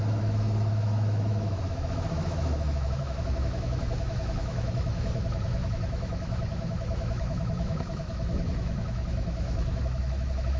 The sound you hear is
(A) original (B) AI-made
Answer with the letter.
B